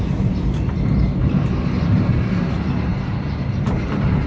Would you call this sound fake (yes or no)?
yes